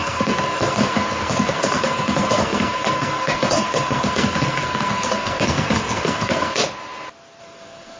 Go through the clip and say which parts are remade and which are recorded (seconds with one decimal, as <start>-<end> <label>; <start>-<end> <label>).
0.0-6.6 remade; 6.6-7.4 recorded; 7.4-8.0 remade